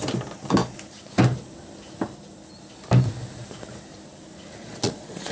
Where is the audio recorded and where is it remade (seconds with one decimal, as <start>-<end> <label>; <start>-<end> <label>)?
0.0-4.6 recorded; 4.6-5.3 remade